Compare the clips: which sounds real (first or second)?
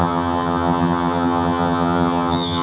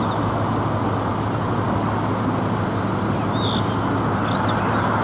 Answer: second